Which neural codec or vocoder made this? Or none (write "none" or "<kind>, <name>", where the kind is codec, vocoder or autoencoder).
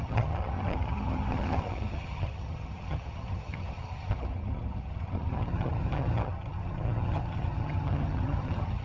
vocoder, HiFi-GAN